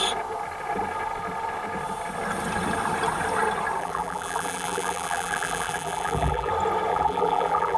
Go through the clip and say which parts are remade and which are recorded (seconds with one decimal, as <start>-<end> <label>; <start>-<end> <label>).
0.0-3.8 recorded; 3.8-6.5 remade; 6.5-6.9 recorded; 6.9-7.8 remade